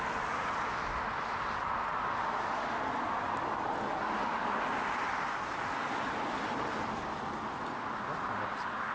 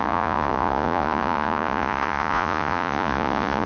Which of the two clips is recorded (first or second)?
first